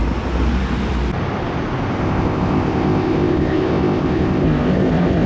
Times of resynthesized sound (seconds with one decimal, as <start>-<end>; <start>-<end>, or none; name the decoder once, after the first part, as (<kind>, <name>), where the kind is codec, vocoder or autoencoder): 2.0-5.3 (codec, ZipCodec)